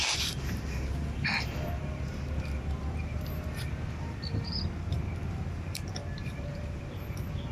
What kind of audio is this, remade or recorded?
remade